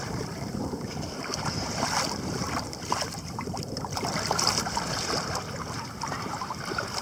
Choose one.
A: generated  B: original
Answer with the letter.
A